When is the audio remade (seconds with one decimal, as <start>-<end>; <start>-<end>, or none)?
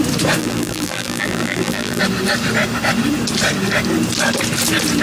0.4-2.0